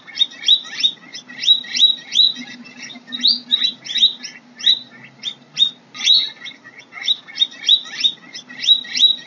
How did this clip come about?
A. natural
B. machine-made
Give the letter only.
A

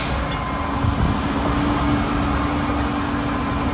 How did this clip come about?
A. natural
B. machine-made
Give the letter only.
A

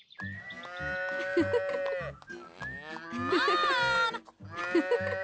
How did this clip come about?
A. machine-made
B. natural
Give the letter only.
B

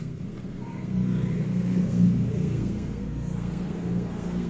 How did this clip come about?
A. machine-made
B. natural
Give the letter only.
A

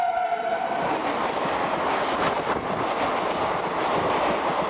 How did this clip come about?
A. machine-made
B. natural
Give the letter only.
B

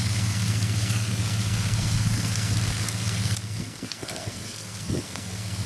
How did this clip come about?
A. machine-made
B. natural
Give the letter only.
A